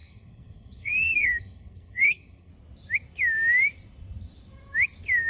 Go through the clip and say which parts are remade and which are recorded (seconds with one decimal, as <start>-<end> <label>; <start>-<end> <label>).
0.0-2.5 remade; 2.5-5.3 recorded